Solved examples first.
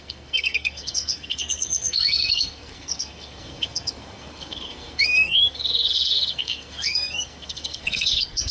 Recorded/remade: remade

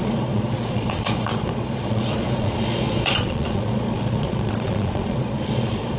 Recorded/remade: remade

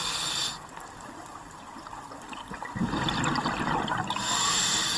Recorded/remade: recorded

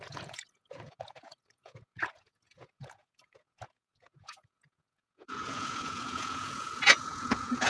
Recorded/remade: remade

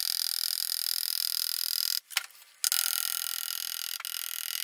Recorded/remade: recorded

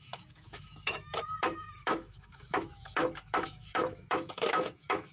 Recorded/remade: remade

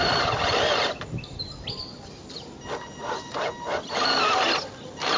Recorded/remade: recorded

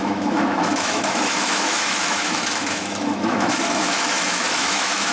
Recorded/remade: remade